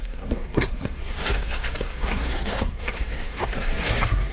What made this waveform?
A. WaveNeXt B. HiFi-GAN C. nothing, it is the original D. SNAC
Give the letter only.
D